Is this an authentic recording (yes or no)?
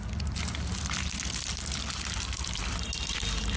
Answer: yes